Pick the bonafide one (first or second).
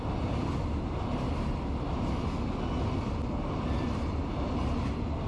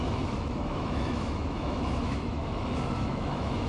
first